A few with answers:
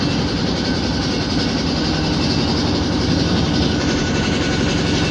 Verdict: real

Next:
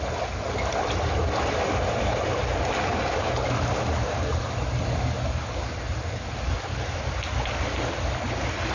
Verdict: real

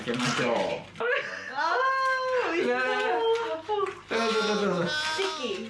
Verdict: real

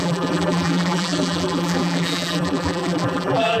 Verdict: fake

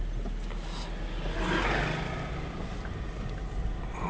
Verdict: real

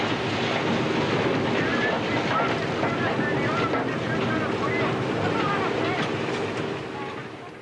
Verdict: real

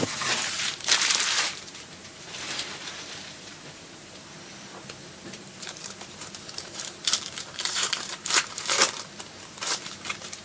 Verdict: fake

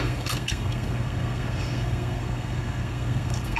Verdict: fake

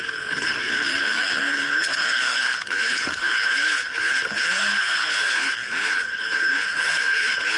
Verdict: fake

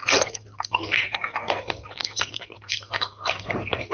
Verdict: fake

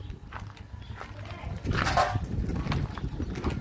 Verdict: real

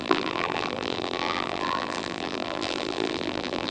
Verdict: fake